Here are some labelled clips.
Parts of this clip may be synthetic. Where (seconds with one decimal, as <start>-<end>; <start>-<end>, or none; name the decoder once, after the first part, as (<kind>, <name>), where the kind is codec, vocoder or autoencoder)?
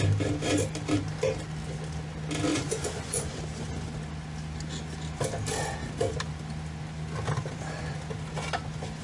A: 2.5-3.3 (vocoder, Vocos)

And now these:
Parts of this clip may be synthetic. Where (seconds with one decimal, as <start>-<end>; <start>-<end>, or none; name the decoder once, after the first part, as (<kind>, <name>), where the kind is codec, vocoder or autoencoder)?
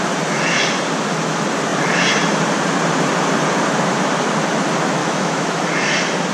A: 5.0-5.6 (autoencoder, DAC-VAE)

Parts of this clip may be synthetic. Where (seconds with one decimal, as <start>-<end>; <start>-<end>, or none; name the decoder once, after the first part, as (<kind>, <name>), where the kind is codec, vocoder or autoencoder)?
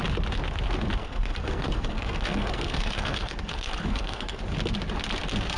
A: 1.0-4.4 (codec, SNAC)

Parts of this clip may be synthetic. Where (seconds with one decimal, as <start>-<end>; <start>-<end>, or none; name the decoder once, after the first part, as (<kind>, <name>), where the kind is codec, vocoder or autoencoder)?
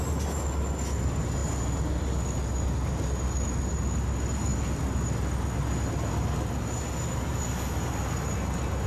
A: none